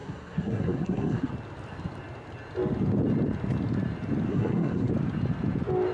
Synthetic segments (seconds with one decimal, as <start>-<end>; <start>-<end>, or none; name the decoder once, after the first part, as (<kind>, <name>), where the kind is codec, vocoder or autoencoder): 0.0-1.3 (codec, SNAC); 4.3-4.9